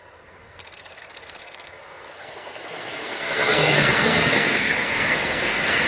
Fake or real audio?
fake